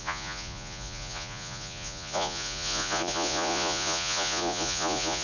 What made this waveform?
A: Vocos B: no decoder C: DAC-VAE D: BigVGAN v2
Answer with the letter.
A